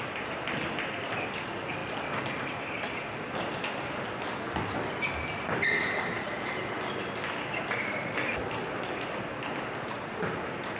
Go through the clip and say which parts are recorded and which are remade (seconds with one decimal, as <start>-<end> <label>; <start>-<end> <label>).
0.0-10.8 recorded